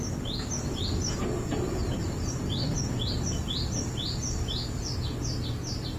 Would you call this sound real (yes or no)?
yes